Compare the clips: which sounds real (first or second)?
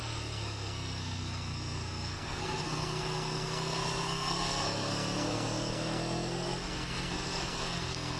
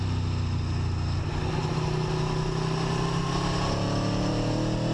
second